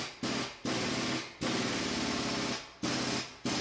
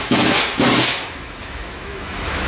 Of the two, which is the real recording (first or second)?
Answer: first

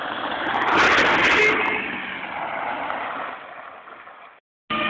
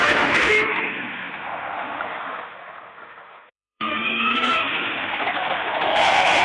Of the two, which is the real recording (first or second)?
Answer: first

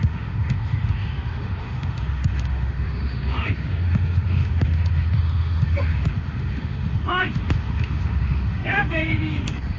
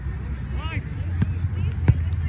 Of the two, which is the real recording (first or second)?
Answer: second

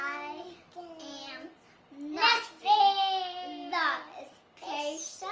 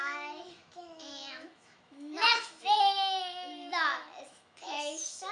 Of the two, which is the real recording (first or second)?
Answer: first